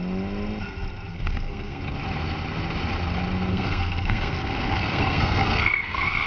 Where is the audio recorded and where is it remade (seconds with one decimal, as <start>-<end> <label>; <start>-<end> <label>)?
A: 0.0-1.1 recorded; 1.1-1.8 remade; 1.8-3.5 recorded; 3.5-6.3 remade